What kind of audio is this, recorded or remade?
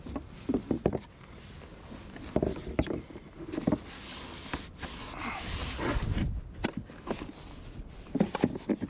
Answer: recorded